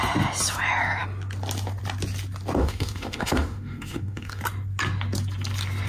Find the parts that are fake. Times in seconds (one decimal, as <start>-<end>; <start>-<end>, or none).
2.6-4.4